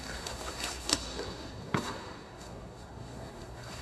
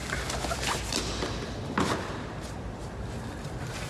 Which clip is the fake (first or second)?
first